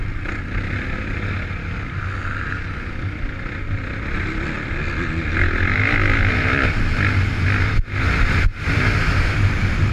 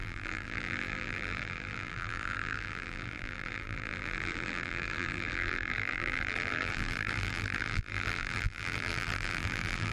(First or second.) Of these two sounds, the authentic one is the first